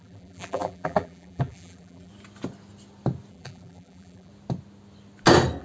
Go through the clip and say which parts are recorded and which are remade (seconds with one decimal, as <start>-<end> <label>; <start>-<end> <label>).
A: 0.0-2.1 remade; 2.1-3.3 recorded; 3.3-4.3 remade; 4.3-5.6 recorded